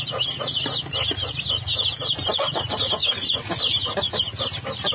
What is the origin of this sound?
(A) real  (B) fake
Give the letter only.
A